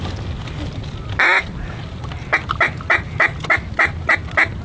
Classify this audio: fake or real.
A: real